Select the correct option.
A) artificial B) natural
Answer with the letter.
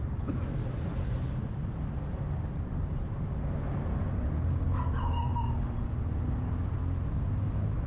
B